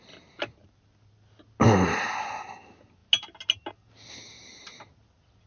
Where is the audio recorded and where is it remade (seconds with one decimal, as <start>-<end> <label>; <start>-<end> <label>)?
0.0-5.5 recorded

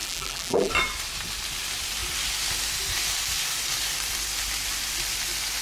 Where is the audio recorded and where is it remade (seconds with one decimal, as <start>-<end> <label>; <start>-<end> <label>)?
0.0-0.7 remade; 0.7-5.6 recorded